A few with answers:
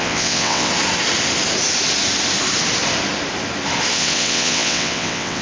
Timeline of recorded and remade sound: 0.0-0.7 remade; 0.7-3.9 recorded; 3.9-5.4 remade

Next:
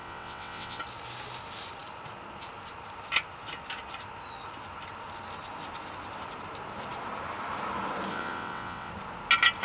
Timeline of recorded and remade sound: 0.0-0.8 remade; 0.8-8.1 recorded; 8.1-8.9 remade; 8.9-9.6 recorded

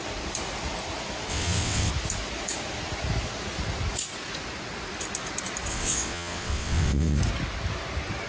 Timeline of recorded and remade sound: 0.0-1.3 recorded; 1.3-1.9 remade; 1.9-5.7 recorded; 5.7-7.2 remade; 7.2-8.3 recorded

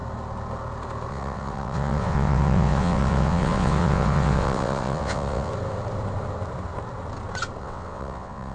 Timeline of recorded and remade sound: 0.0-1.1 recorded; 1.1-5.5 remade; 5.5-7.6 recorded; 7.6-8.5 remade

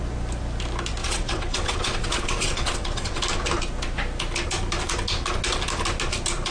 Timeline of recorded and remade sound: 0.0-1.0 recorded; 1.0-3.2 remade; 3.2-6.5 recorded

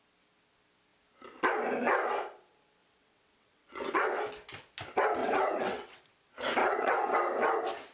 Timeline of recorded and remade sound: 0.0-2.8 recorded; 2.8-4.2 remade; 4.2-5.2 recorded; 5.2-6.1 remade; 6.1-6.6 recorded; 6.6-7.1 remade; 7.1-7.9 recorded

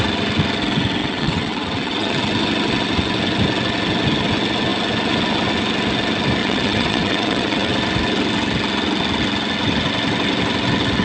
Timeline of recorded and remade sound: 0.0-1.0 recorded; 1.0-2.2 remade; 2.2-6.4 recorded; 6.4-7.7 remade; 7.7-11.0 recorded